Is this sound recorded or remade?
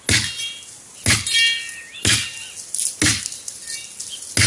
recorded